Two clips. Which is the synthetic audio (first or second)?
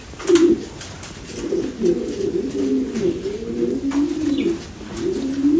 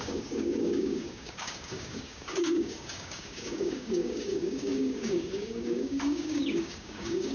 second